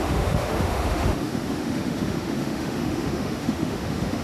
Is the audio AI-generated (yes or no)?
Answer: yes